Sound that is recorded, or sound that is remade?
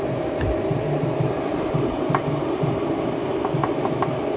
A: remade